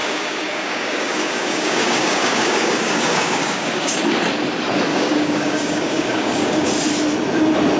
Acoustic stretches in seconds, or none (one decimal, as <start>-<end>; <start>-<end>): 4.0-4.9; 6.7-7.8